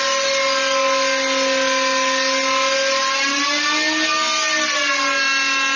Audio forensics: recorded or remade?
recorded